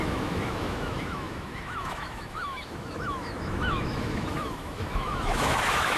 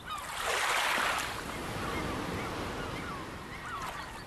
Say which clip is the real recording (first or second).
second